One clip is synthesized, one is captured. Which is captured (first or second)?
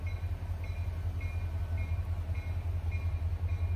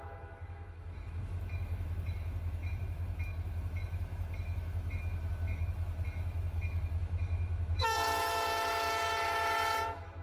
first